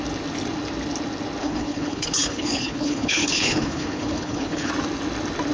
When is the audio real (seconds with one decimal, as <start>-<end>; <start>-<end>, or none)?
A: 0.0-1.4; 4.7-5.5